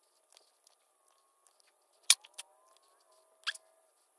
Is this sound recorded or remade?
recorded